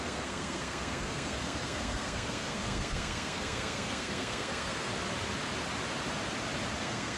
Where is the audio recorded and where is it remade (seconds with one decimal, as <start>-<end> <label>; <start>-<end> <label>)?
0.0-4.9 remade; 4.9-6.8 recorded; 6.8-7.2 remade